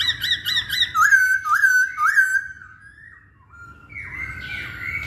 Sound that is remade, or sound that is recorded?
recorded